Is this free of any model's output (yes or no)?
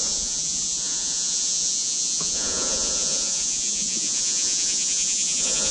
no